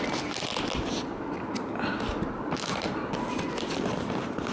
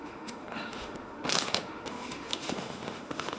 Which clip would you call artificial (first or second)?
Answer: second